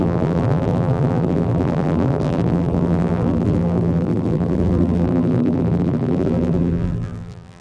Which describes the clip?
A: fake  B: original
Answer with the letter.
A